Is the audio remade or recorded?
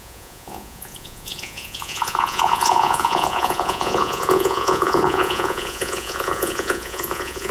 remade